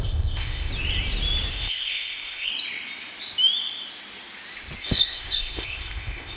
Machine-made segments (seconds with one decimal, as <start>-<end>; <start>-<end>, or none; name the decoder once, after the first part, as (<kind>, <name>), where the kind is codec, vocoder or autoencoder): 0.0-0.7 (codec, ZipCodec); 1.5-2.5; 4.8-6.4